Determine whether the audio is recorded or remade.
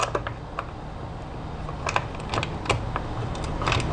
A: recorded